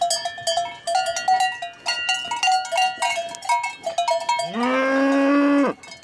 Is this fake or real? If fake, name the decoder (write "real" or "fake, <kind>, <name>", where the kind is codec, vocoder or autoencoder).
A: real